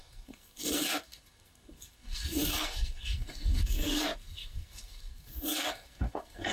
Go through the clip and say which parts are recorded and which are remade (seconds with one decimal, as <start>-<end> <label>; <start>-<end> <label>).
0.0-6.5 remade